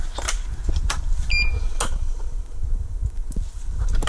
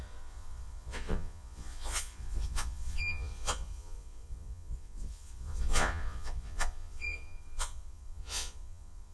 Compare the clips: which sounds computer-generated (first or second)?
second